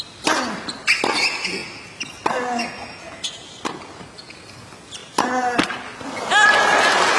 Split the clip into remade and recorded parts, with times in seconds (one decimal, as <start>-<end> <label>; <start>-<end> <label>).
0.0-5.0 recorded; 5.0-5.8 remade; 5.8-7.2 recorded